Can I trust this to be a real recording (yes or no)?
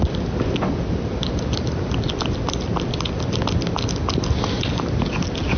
yes